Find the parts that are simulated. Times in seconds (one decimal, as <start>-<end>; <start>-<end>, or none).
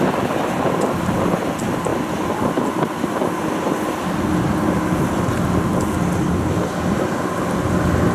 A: none